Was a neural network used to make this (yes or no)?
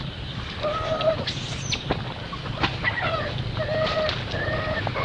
no